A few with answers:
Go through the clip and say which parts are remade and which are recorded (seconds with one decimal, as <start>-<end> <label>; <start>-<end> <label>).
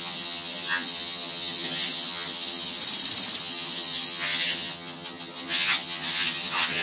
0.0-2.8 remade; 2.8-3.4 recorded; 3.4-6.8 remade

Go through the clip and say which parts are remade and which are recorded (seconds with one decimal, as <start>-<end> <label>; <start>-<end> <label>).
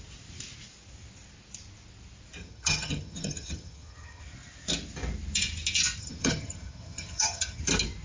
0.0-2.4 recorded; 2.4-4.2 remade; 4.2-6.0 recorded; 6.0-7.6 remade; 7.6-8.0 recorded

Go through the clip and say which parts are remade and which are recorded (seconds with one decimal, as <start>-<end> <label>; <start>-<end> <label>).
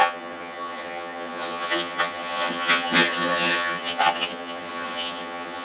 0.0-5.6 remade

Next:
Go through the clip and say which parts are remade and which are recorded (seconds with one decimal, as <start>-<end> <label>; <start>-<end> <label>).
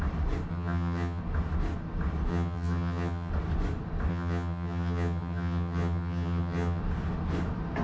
0.0-0.5 recorded; 0.5-1.2 remade; 1.2-2.3 recorded; 2.3-3.3 remade; 3.3-4.1 recorded; 4.1-6.8 remade; 6.8-7.8 recorded